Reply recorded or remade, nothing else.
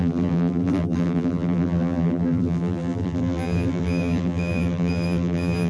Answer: remade